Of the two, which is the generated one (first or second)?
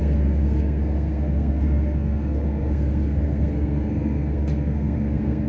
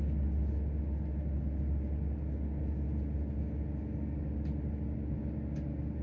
first